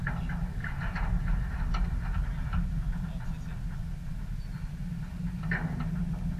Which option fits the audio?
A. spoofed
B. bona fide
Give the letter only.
B